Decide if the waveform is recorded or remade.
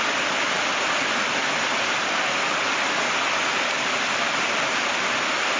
recorded